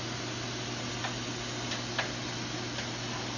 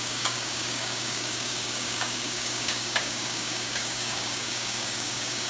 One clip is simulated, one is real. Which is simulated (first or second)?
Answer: second